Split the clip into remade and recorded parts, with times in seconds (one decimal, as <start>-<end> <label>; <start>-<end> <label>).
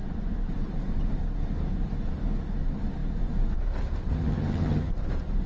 0.0-4.1 recorded; 4.1-4.9 remade; 4.9-5.5 recorded